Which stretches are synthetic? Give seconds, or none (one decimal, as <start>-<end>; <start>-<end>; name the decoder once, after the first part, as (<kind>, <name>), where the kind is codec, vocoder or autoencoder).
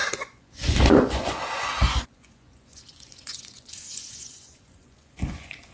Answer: 0.0-5.7 (vocoder, Vocos)